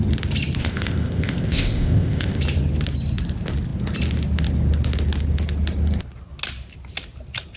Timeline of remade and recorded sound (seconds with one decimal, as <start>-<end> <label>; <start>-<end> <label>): 0.0-0.6 recorded; 0.6-2.4 remade; 2.4-7.6 recorded